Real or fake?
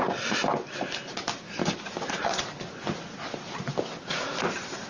real